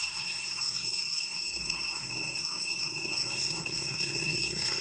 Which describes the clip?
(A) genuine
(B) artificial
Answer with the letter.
B